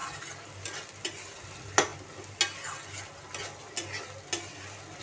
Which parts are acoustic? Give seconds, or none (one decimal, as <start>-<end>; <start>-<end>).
0.0-5.0